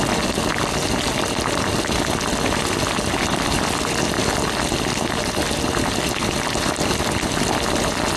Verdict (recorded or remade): recorded